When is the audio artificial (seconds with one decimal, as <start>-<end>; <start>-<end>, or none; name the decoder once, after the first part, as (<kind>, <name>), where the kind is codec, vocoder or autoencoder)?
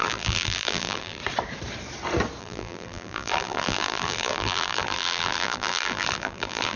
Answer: 0.0-1.2 (vocoder, BigVGAN v2); 2.4-6.8